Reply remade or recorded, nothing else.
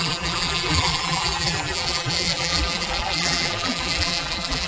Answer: remade